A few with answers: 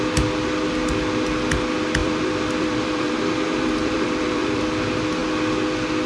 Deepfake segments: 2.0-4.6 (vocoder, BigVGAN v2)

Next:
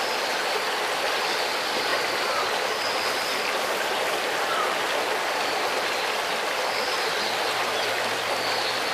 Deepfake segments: none

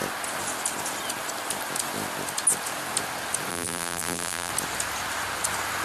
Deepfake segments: 3.5-4.5 (vocoder, BigVGAN v2)

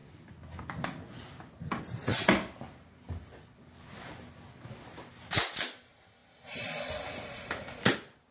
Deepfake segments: 6.2-7.3 (vocoder, BigVGAN v2)

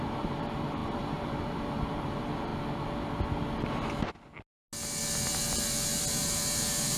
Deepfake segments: 0.0-2.5 (vocoder, BigVGAN v2); 6.1-7.0

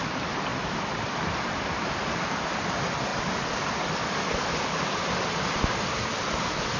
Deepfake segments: 0.5-1.9 (vocoder, BigVGAN v2); 3.1-6.8

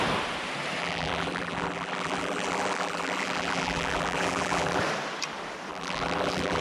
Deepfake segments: 0.8-4.8 (vocoder, BigVGAN v2); 5.7-6.6